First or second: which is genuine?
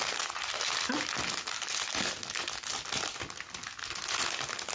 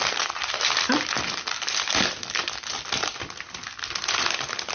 first